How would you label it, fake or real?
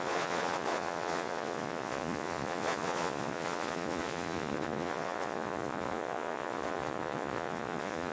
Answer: fake